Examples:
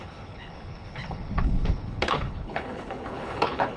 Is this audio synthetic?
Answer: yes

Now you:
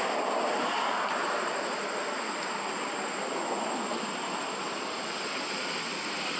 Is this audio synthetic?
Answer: no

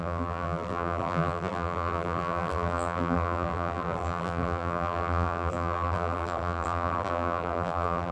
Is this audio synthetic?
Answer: yes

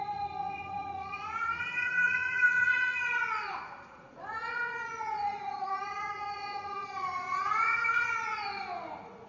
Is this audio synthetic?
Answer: yes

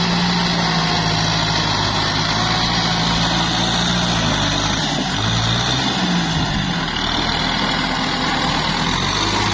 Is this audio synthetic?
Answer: no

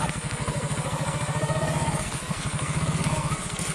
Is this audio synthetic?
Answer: yes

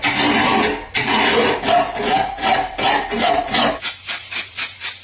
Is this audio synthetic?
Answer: no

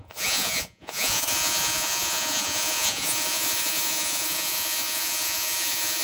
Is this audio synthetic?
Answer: yes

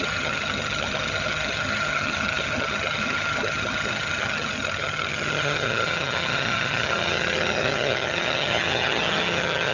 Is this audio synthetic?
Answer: yes